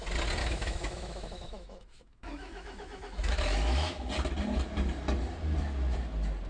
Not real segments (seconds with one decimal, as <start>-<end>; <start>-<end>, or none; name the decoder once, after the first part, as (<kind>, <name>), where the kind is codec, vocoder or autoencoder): 0.4-4.1 (autoencoder, DAC-VAE)